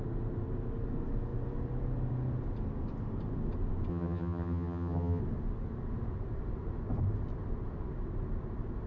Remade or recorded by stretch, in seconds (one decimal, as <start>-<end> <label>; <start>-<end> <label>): 0.0-3.9 recorded; 3.9-5.2 remade; 5.2-8.9 recorded